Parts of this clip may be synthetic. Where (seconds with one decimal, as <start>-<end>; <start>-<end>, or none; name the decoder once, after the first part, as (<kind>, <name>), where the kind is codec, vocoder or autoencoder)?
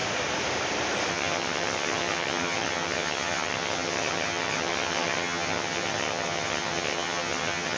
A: 1.1-7.8 (vocoder, HiFi-GAN)